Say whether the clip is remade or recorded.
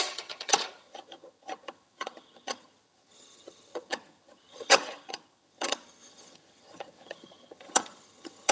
remade